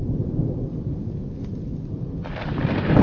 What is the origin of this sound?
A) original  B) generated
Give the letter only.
A